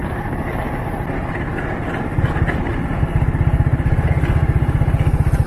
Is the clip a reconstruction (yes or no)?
no